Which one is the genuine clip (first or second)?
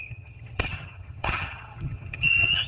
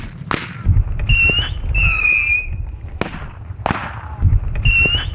second